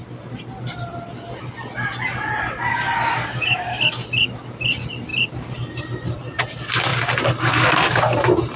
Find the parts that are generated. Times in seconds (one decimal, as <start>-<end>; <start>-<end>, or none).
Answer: 2.7-3.8